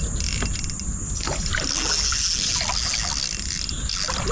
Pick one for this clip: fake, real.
real